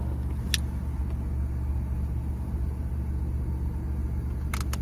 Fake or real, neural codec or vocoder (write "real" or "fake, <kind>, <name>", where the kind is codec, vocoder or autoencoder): real